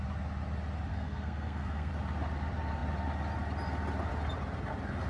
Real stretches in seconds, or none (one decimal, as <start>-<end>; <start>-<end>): 0.0-0.9; 1.9-5.1